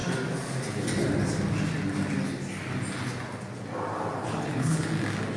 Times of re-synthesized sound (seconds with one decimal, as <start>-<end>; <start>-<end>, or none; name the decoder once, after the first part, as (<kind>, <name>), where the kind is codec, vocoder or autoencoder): 4.2-4.9 (codec, HILCodec)